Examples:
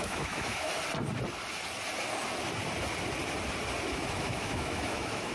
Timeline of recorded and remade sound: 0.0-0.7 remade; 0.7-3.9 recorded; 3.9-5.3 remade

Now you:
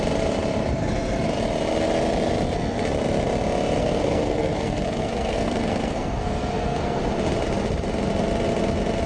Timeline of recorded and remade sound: 0.0-3.8 recorded; 3.8-7.0 remade; 7.0-9.1 recorded

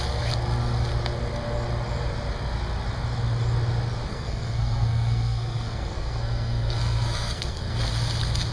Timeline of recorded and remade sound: 0.0-4.1 recorded; 4.1-7.8 remade; 7.8-8.5 recorded

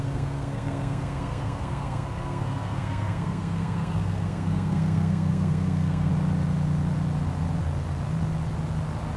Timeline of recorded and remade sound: 0.0-6.1 remade; 6.1-9.2 recorded

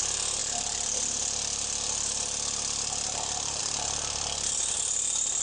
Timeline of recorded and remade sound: 0.0-0.4 recorded; 0.4-3.6 remade; 3.6-5.4 recorded

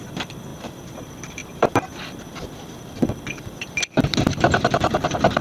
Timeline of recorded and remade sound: 0.0-5.4 remade

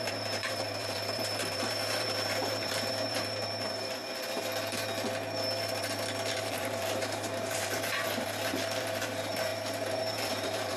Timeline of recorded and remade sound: 0.0-4.0 remade; 4.0-6.3 recorded; 6.3-10.8 remade

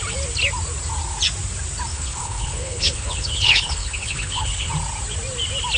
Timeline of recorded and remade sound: 0.0-1.9 recorded; 1.9-4.7 remade; 4.7-5.8 recorded